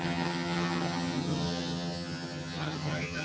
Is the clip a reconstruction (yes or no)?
yes